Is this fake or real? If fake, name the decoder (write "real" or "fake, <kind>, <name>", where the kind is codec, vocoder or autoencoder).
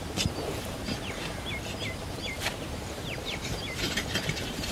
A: fake, vocoder, BigVGAN v2